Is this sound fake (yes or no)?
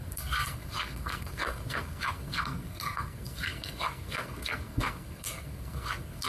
yes